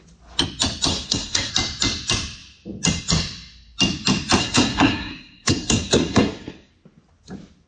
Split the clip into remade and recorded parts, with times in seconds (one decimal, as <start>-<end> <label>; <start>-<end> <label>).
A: 0.0-0.9 recorded; 0.9-1.5 remade; 1.5-4.4 recorded; 4.4-6.7 remade; 6.7-7.7 recorded